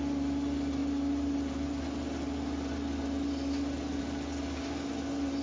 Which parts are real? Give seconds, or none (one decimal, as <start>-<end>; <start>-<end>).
0.0-5.4